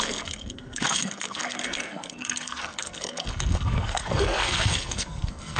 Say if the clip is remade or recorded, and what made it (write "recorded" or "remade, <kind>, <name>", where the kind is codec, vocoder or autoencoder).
remade, codec, SNAC